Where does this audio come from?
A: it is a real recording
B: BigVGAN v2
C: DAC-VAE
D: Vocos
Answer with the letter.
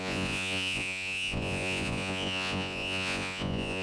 D